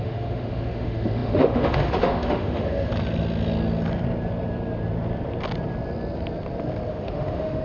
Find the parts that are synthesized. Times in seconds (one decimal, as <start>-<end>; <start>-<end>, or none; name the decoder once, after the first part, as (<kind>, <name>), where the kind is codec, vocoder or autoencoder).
0.0-2.9 (autoencoder, DAC-VAE); 6.9-7.6